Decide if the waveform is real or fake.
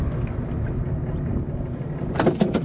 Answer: real